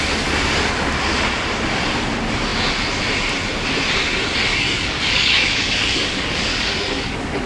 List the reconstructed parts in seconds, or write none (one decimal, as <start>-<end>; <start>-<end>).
4.5-7.5